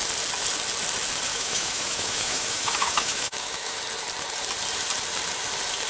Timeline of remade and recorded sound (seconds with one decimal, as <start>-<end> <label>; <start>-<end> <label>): 0.0-1.3 recorded; 1.3-3.8 remade; 3.8-5.9 recorded